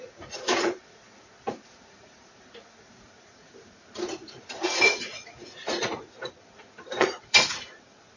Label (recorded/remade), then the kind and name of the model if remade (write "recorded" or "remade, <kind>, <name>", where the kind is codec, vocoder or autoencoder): remade, vocoder, Vocos